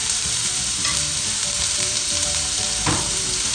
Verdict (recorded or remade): remade